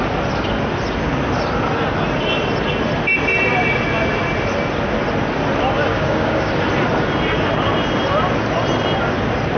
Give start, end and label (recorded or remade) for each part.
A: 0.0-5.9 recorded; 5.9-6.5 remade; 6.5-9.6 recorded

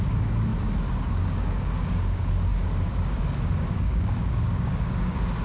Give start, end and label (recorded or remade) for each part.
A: 0.0-0.5 remade; 0.5-1.1 recorded; 1.1-5.4 remade

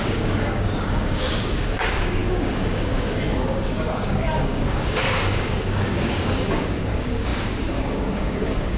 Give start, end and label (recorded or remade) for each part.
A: 0.0-8.8 remade

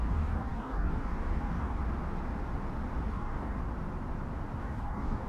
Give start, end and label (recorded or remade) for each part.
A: 0.0-1.8 remade; 1.8-3.1 recorded; 3.1-3.6 remade; 3.6-4.6 recorded; 4.6-5.3 remade